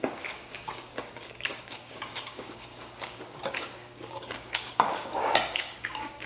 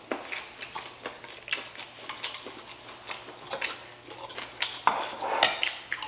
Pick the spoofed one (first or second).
first